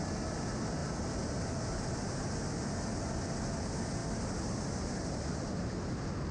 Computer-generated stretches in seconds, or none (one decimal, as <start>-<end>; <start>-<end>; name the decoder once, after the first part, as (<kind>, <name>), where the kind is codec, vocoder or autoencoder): none